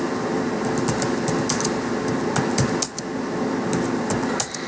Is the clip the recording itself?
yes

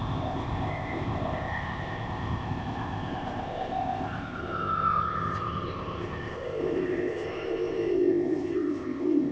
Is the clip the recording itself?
no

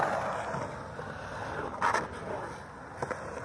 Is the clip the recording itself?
yes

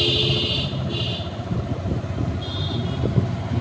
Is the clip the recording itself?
yes